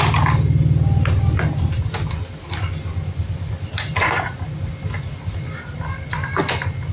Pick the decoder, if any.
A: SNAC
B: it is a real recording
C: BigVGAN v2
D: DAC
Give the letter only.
B